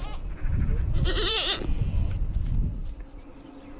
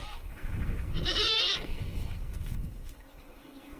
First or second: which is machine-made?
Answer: second